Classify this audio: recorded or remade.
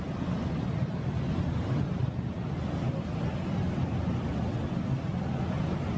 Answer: recorded